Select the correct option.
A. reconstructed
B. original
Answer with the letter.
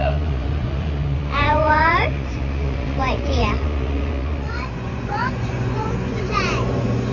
A